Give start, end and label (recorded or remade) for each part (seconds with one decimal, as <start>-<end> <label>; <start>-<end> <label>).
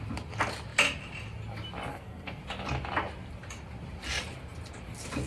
0.0-1.9 recorded; 1.9-2.4 remade; 2.4-5.3 recorded